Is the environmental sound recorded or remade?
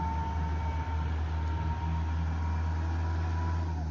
recorded